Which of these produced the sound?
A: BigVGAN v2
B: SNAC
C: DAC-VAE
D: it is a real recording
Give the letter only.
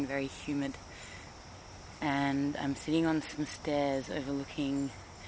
D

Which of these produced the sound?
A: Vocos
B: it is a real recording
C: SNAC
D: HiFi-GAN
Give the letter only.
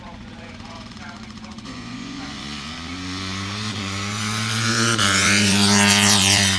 A